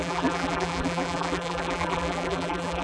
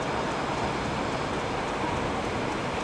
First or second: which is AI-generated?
first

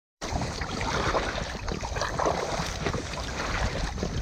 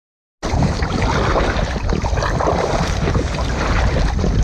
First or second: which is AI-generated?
first